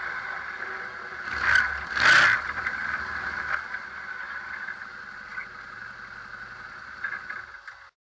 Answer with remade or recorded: recorded